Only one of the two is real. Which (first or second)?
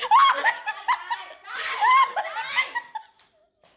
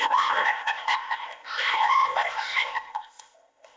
first